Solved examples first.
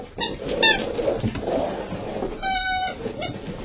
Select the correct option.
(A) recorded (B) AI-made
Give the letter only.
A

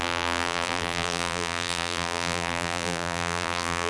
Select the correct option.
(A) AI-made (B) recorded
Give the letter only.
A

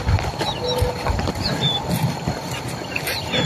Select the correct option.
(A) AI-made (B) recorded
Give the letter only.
B